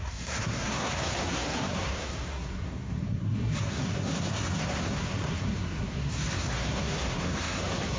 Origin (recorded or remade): remade